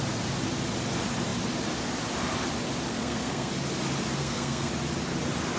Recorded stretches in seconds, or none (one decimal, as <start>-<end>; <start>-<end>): 0.0-2.9; 3.5-4.2; 4.7-5.6